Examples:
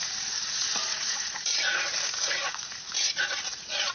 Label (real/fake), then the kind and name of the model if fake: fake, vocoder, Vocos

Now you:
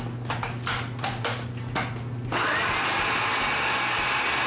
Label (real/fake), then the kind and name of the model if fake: real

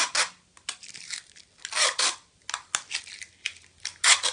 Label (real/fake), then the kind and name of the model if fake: real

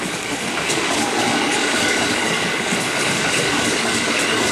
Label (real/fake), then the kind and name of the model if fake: fake, codec, DAC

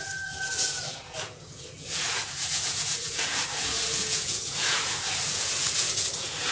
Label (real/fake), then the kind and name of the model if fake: fake, vocoder, Vocos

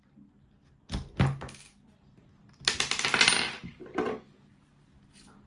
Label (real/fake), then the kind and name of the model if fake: real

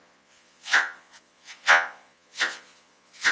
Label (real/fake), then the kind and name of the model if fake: fake, vocoder, Vocos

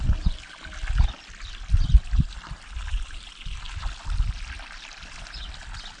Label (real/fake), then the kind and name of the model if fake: real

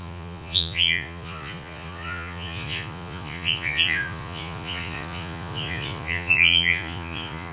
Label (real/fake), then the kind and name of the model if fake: fake, vocoder, Vocos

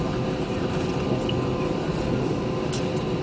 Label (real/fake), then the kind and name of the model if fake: real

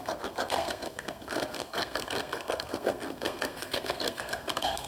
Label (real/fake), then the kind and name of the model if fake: fake, codec, SNAC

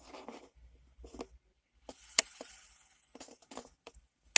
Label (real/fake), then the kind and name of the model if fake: real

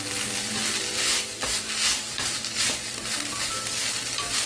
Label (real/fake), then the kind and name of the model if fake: real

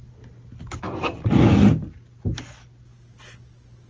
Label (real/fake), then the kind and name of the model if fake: real